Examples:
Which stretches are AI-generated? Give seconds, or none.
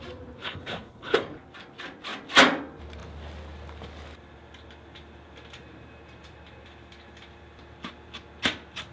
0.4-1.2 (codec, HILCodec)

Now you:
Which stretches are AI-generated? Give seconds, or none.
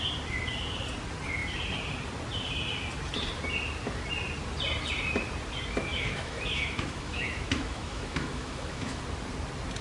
5.9-9.0 (autoencoder, DAC-VAE)